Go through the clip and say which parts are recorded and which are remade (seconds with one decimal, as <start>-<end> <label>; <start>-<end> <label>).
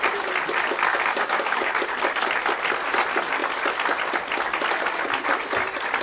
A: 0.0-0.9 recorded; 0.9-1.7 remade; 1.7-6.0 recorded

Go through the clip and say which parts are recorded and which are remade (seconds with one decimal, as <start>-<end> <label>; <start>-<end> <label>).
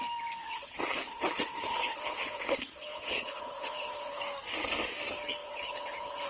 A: 0.0-0.4 recorded; 0.4-4.2 remade; 4.2-5.4 recorded; 5.4-6.3 remade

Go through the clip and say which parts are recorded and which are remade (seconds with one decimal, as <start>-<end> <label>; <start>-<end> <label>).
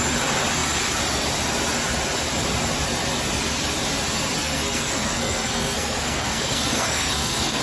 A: 0.0-4.4 recorded; 4.4-7.6 remade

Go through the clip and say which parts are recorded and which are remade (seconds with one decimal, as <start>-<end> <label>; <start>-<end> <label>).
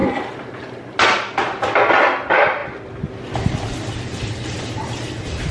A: 0.0-5.5 recorded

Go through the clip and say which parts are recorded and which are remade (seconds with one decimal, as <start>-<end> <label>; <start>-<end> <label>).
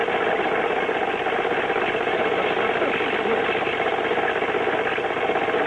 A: 0.0-5.7 recorded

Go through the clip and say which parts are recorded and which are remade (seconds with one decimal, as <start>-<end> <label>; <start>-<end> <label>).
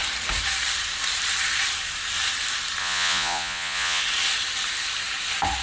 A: 0.0-2.8 recorded; 2.8-4.0 remade; 4.0-5.6 recorded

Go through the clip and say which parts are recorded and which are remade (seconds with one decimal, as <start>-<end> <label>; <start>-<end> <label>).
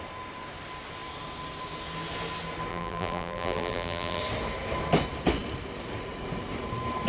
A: 0.0-2.7 recorded; 2.7-4.2 remade; 4.2-7.1 recorded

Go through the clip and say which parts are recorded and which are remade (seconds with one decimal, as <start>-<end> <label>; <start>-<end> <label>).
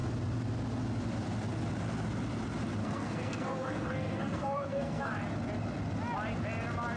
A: 0.0-2.8 recorded; 2.8-5.1 remade; 5.1-7.0 recorded